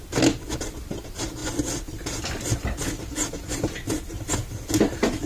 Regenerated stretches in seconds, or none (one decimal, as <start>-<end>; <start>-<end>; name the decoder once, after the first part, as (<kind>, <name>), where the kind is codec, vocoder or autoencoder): none